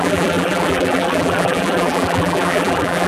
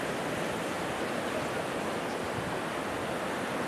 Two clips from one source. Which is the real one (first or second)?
second